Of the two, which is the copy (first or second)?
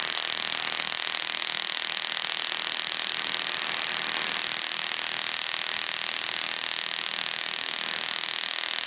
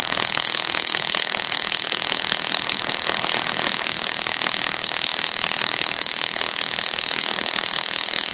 second